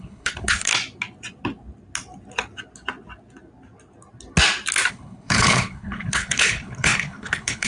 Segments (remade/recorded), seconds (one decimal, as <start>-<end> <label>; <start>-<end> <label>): 0.0-0.7 remade; 0.7-4.9 recorded; 4.9-7.7 remade